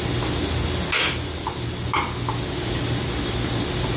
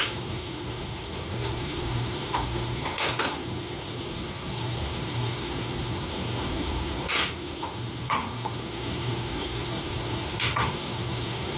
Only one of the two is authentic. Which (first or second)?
first